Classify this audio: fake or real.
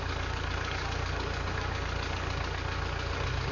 fake